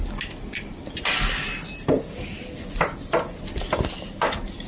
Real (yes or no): yes